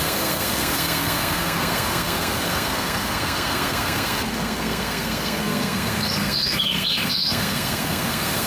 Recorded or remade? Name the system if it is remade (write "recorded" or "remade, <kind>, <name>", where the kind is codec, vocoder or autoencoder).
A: remade, codec, SNAC